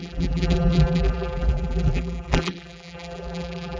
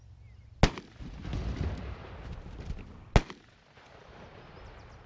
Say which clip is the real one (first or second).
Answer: second